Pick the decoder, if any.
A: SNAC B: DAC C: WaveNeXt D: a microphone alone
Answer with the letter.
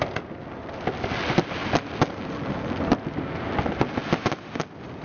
D